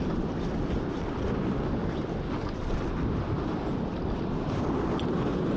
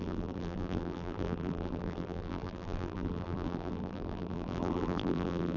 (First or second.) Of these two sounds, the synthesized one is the second